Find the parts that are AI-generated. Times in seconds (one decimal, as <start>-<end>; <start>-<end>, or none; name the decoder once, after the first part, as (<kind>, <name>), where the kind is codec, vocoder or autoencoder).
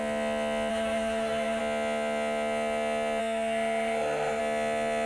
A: 0.7-1.6 (autoencoder, DAC-VAE); 3.2-4.4